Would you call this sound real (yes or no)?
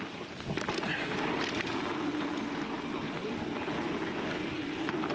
yes